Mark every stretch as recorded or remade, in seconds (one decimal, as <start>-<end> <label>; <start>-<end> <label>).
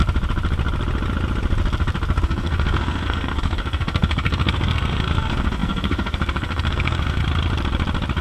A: 0.0-2.2 recorded; 2.2-7.2 remade; 7.2-8.2 recorded